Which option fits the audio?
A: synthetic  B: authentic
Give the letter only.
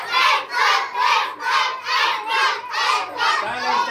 B